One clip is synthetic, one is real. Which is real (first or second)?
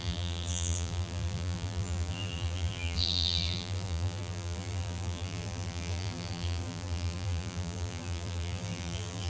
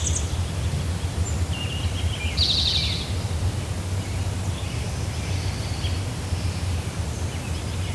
second